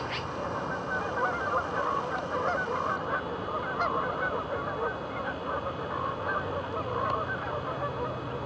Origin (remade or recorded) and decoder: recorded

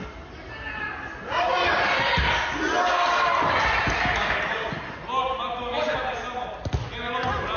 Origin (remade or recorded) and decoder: recorded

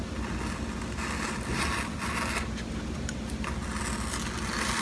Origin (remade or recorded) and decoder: recorded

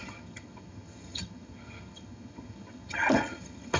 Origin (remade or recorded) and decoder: remade, vocoder, HiFi-GAN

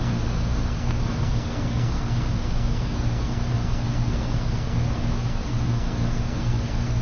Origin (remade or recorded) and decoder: remade, codec, SNAC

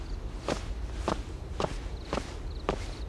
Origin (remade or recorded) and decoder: recorded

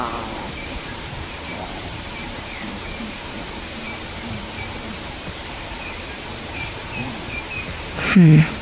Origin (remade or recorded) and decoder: remade, vocoder, BigVGAN v2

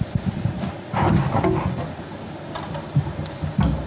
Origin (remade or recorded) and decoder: recorded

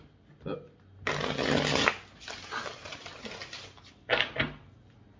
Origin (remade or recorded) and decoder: recorded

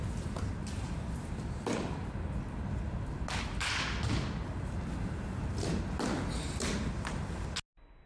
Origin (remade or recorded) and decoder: recorded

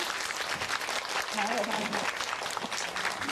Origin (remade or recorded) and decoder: recorded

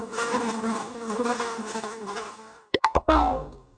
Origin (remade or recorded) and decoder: remade, codec, DAC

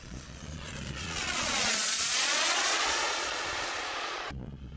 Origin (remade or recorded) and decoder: remade, vocoder, Vocos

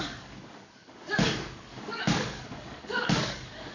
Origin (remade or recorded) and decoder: remade, codec, DAC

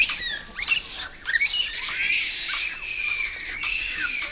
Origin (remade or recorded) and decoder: recorded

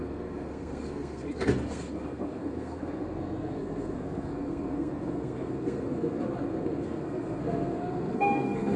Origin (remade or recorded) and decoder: remade, codec, SNAC